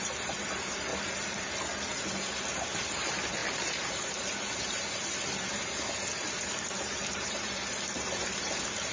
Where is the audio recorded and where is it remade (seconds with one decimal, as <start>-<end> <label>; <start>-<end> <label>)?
0.0-0.9 remade; 0.9-2.8 recorded; 2.8-8.9 remade

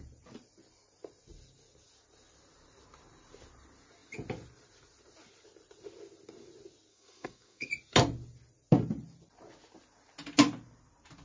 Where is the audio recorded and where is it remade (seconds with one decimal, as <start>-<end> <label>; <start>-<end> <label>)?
0.0-6.9 recorded; 6.9-7.7 remade; 7.7-11.2 recorded

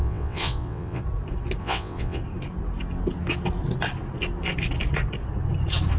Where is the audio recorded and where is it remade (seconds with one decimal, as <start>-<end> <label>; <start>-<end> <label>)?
0.0-1.0 remade; 1.0-1.6 recorded; 1.6-2.2 remade; 2.2-6.0 recorded

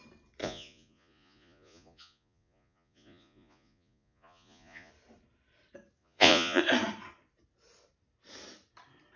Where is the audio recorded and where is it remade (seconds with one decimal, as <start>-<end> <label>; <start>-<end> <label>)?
0.0-0.4 recorded; 0.4-4.9 remade; 4.9-6.0 recorded; 6.0-6.6 remade; 6.6-9.2 recorded

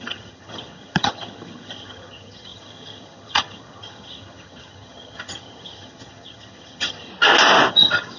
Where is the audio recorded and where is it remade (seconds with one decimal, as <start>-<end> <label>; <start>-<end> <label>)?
0.0-7.1 remade; 7.1-7.7 recorded; 7.7-8.2 remade

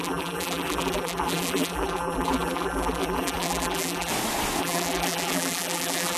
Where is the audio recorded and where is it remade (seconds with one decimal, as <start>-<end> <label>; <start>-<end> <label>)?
0.0-4.1 remade; 4.1-4.6 recorded; 4.6-6.2 remade